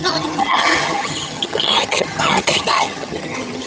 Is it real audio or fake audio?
fake